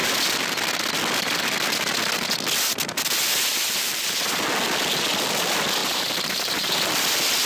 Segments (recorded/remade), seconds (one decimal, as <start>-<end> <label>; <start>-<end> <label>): 0.0-3.5 recorded; 3.5-4.4 remade; 4.4-5.8 recorded; 5.8-6.7 remade; 6.7-7.5 recorded